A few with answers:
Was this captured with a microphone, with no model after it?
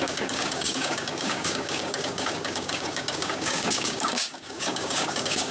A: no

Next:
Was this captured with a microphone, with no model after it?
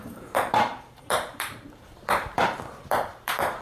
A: no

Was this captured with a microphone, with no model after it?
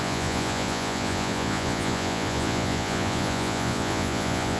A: no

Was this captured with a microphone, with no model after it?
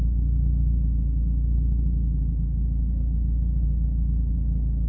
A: yes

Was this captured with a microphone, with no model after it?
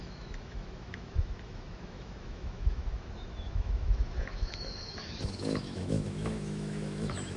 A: no